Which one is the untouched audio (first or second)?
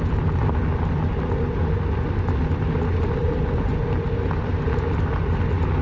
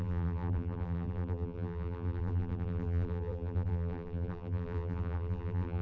first